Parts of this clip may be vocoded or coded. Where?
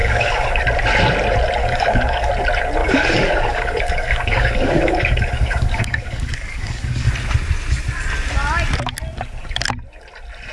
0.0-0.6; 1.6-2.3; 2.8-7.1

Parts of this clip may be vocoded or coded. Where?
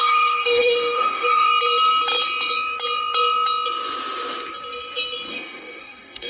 0.0-1.5; 5.3-6.3